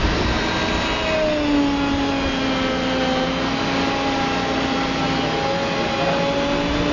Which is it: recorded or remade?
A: recorded